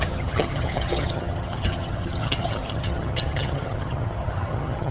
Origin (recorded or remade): remade